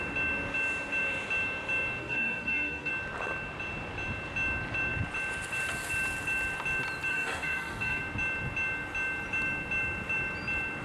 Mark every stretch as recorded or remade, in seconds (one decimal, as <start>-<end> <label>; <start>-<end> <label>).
0.0-2.0 recorded; 2.0-2.9 remade; 2.9-7.1 recorded; 7.1-8.0 remade; 8.0-10.8 recorded